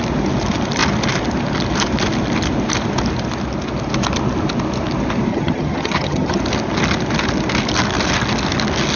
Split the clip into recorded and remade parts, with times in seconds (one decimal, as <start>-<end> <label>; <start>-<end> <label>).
0.0-5.3 recorded; 5.3-6.4 remade; 6.4-9.0 recorded